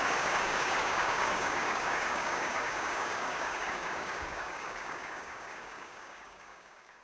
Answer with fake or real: fake